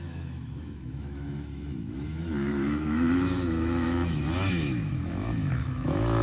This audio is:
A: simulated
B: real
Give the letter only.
A